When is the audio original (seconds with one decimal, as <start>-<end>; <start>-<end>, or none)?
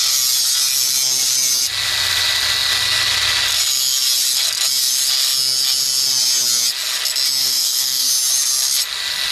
0.0-7.4; 8.1-9.3